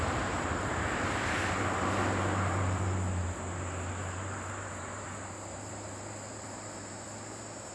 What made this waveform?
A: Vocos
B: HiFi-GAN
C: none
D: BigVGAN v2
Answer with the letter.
D